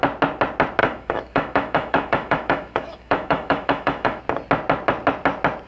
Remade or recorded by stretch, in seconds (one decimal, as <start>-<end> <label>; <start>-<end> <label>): 0.0-0.8 recorded; 0.8-4.2 remade; 4.2-5.7 recorded

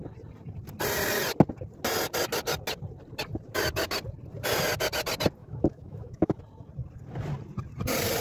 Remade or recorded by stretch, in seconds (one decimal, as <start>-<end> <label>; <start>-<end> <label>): 0.0-5.4 recorded; 5.4-6.4 remade; 6.4-8.2 recorded